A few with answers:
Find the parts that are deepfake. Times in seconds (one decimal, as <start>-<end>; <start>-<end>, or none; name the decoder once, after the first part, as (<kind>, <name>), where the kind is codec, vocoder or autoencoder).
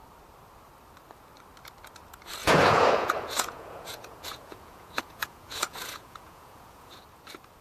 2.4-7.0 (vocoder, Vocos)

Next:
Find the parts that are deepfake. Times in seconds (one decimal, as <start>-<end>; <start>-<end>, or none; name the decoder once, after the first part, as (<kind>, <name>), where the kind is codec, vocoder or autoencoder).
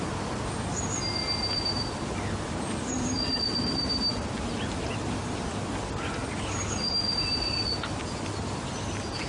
none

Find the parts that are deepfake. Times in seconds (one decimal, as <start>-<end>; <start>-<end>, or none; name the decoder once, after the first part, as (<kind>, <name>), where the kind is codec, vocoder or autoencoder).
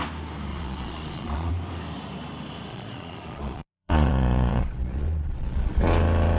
0.5-1.5 (vocoder, Vocos); 2.7-5.8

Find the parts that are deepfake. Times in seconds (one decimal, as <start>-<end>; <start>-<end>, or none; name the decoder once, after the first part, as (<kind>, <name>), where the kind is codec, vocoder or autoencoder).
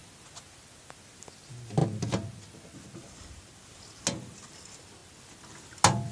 none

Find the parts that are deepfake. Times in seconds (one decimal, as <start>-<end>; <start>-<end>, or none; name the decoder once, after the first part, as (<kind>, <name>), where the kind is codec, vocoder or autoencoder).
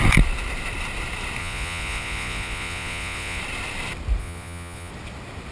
1.4-3.4 (vocoder, Vocos); 4.2-4.9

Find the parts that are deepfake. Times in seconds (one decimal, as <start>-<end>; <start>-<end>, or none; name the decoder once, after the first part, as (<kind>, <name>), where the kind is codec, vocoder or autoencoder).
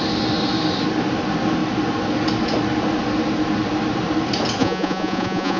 4.6-5.6 (vocoder, Vocos)